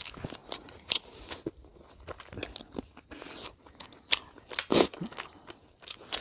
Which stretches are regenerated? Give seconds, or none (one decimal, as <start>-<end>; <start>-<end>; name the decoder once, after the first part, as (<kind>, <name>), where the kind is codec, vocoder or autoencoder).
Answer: 0.4-1.2 (vocoder, Vocos)